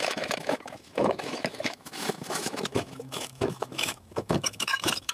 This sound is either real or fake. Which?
fake